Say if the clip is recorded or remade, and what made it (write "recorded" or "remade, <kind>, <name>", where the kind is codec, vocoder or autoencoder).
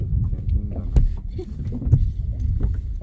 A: recorded